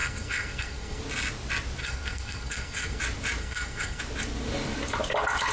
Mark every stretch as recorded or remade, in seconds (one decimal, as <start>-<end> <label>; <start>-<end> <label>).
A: 0.0-1.0 remade; 1.0-1.8 recorded; 1.8-3.0 remade; 3.0-3.4 recorded; 3.4-4.0 remade; 4.0-5.5 recorded